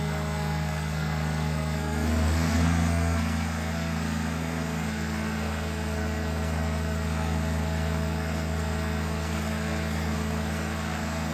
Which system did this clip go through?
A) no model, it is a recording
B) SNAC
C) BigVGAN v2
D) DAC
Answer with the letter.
B